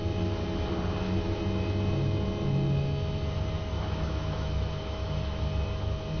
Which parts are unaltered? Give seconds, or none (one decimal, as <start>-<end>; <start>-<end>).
0.0-3.7; 5.4-6.2